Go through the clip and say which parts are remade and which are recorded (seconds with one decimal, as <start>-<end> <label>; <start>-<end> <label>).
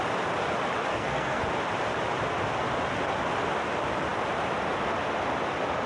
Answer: 0.0-0.9 recorded; 0.9-1.4 remade; 1.4-5.9 recorded